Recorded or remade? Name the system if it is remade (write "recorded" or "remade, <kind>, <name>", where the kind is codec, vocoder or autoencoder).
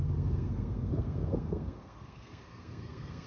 remade, codec, SNAC